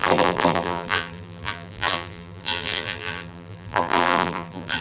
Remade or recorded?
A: remade